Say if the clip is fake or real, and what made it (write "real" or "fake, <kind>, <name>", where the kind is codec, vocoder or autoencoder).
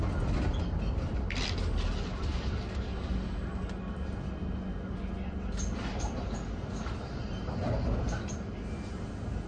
real